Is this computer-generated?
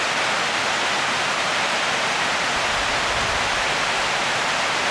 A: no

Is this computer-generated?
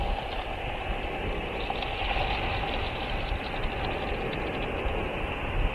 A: no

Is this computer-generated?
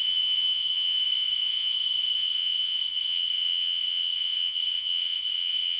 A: yes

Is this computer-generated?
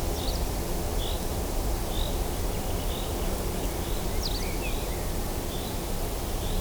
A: no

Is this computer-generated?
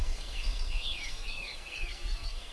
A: yes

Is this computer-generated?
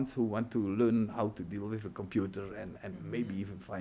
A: no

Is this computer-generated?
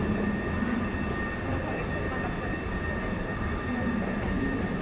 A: no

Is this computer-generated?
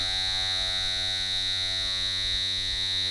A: yes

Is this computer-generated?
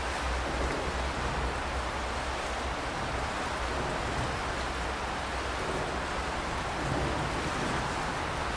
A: no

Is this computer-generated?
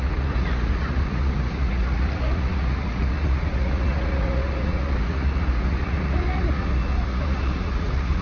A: yes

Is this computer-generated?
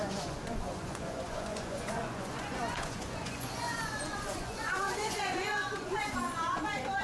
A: yes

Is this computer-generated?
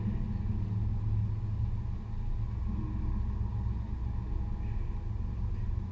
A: no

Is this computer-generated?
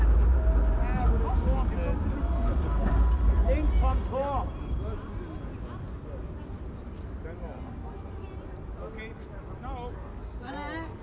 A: no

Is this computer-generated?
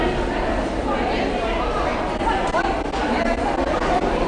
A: no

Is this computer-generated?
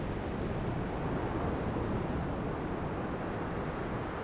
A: no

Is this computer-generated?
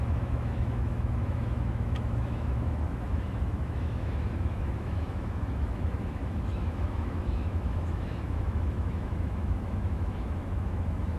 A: yes